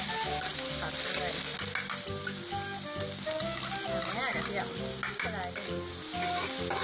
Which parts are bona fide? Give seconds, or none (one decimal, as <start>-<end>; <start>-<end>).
0.0-6.8

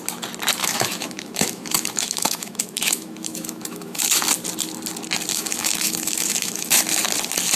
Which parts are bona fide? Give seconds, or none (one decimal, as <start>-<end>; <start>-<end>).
0.0-0.6; 4.0-5.3; 6.8-7.6

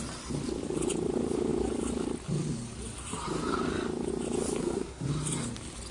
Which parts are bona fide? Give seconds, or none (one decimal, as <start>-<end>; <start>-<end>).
0.0-4.6; 5.1-5.9

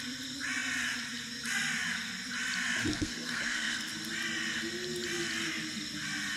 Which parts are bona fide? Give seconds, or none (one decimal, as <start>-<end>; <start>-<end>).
0.0-2.9; 3.9-6.4

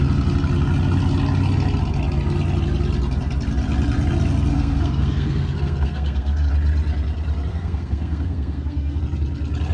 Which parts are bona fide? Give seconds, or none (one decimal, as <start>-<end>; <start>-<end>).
0.0-4.5; 6.5-7.5; 9.0-9.7

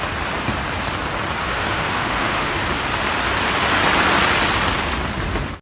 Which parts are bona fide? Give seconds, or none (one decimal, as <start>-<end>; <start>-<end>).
0.0-1.4; 2.5-5.6

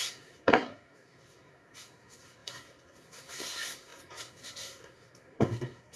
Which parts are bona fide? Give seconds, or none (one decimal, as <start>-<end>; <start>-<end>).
none

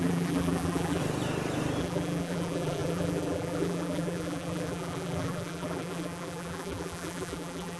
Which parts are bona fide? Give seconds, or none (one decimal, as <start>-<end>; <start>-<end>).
1.0-1.8